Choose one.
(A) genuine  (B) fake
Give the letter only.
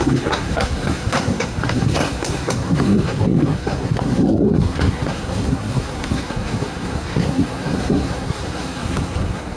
B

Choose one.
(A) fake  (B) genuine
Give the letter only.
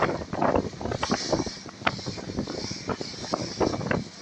B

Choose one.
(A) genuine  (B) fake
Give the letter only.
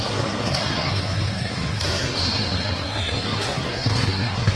B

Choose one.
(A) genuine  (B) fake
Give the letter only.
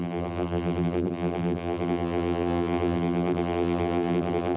B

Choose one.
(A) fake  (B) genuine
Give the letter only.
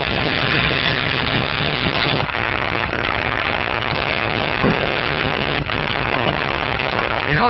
A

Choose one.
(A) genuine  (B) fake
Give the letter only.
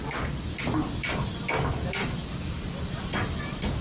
A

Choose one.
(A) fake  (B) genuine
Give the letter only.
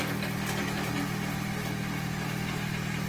B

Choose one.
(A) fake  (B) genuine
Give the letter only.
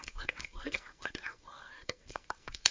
A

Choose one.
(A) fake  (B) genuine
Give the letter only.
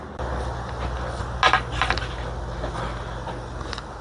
B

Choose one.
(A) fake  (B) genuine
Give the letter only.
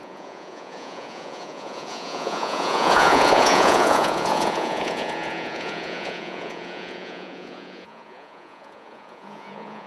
A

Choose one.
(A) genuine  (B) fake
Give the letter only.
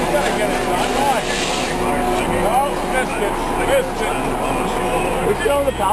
A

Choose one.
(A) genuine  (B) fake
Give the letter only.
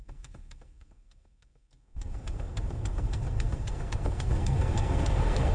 B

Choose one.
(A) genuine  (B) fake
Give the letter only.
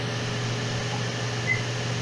A